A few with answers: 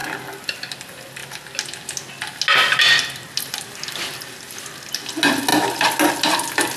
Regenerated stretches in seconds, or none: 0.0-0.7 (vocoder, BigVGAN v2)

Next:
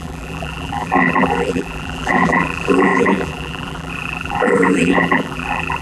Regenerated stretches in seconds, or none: 0.0-5.8 (vocoder, BigVGAN v2)

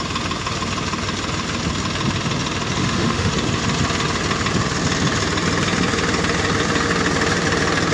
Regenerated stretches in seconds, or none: 2.8-3.3 (autoencoder, DAC-VAE)

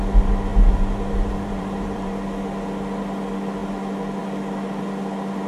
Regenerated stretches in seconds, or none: 0.5-2.1 (vocoder, BigVGAN v2)

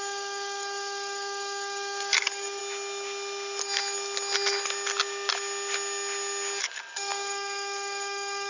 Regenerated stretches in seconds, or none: 0.0-2.6 (codec, DAC); 6.6-8.5

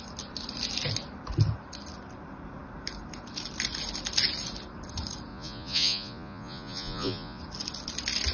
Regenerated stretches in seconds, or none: 5.3-7.4 (vocoder, Vocos)